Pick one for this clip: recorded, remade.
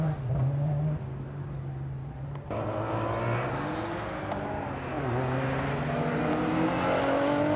recorded